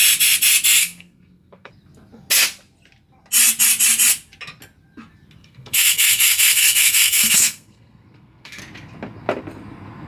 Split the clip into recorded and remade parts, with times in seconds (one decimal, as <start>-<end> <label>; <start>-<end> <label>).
0.0-0.8 recorded; 0.8-1.7 remade; 1.7-5.4 recorded; 5.4-8.6 remade; 8.6-10.1 recorded